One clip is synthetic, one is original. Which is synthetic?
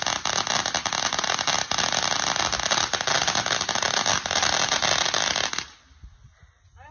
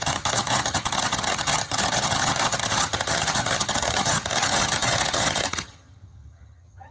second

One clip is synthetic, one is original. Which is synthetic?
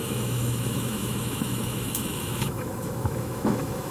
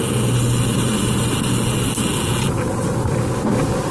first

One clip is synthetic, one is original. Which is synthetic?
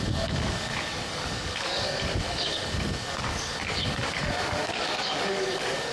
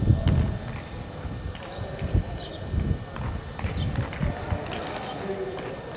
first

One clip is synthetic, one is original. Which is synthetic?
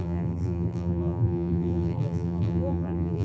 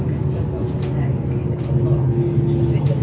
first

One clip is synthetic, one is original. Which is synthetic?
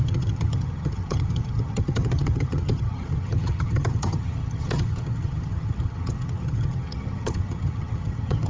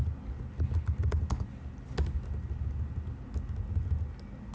first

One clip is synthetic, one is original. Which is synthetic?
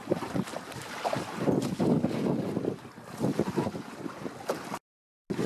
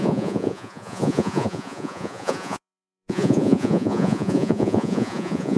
second